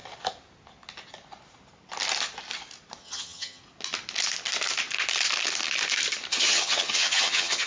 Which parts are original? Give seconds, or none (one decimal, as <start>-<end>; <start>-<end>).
0.0-3.0; 3.6-6.3